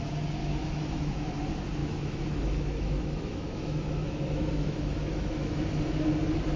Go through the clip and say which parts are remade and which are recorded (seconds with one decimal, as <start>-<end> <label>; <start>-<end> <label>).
0.0-0.4 recorded; 0.4-1.3 remade; 1.3-1.8 recorded; 1.8-5.6 remade; 5.6-6.6 recorded